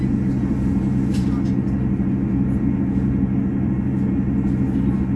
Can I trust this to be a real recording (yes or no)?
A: yes